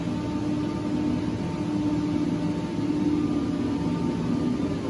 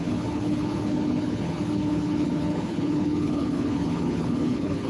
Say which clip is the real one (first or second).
first